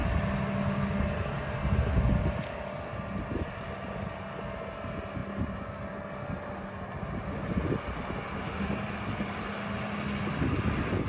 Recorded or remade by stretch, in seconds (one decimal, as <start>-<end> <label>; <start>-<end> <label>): 0.0-11.1 recorded

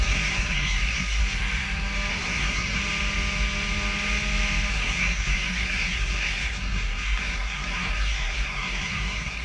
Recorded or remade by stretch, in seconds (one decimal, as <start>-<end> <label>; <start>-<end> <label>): 0.0-1.2 remade; 1.2-2.1 recorded; 2.1-2.8 remade; 2.8-4.7 recorded; 4.7-9.4 remade

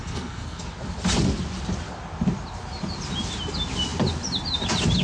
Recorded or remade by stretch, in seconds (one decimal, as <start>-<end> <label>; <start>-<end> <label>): 0.0-0.6 remade; 0.6-5.0 recorded

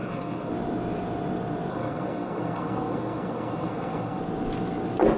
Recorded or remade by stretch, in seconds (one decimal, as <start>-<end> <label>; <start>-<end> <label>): 0.0-0.5 remade; 0.5-1.7 recorded; 1.7-4.2 remade; 4.2-5.2 recorded

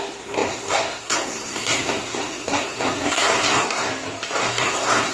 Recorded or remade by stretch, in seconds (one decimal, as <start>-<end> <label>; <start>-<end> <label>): 0.0-3.9 remade; 3.9-4.4 recorded; 4.4-5.1 remade

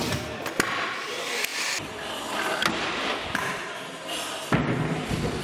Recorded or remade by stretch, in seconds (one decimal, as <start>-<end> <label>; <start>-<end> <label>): 0.0-5.4 recorded

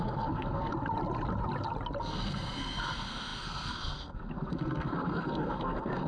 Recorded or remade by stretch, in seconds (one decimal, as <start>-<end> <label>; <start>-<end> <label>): 0.0-0.7 remade; 0.7-2.0 recorded; 2.0-6.1 remade

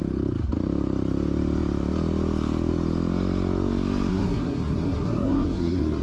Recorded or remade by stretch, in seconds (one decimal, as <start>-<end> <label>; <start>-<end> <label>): 0.0-4.1 recorded; 4.1-6.0 remade